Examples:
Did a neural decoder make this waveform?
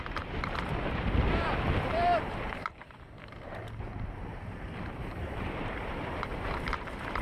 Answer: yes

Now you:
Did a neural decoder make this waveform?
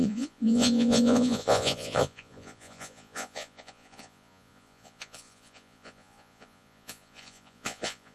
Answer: yes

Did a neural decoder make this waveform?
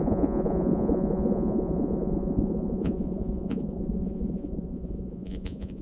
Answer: yes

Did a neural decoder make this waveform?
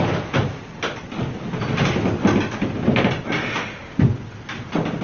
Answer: no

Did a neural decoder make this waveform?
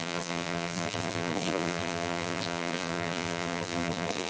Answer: yes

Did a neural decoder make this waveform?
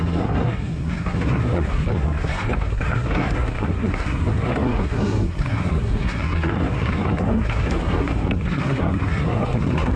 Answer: yes